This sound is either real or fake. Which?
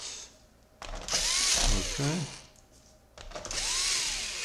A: real